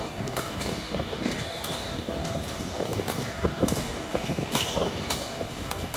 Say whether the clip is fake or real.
fake